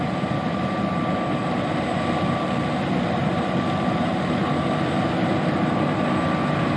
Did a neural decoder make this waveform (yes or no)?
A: no